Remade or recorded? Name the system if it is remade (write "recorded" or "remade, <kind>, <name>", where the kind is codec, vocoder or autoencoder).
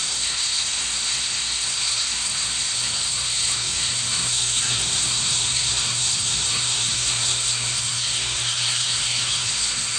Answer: remade, codec, SNAC